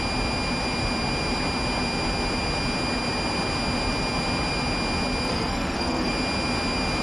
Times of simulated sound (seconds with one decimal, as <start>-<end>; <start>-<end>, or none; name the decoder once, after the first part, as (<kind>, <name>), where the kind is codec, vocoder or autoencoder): 5.3-6.1 (codec, SNAC)